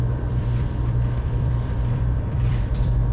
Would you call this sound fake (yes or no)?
yes